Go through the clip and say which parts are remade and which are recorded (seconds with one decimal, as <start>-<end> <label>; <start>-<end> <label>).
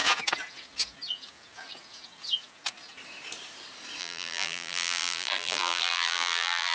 0.0-4.0 recorded; 4.0-6.7 remade